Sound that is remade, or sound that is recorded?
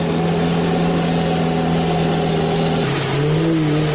recorded